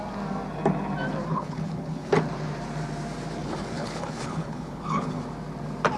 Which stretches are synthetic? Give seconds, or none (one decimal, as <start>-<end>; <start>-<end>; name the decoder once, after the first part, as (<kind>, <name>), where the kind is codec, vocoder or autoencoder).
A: 1.3-2.1 (codec, HILCodec); 3.4-5.2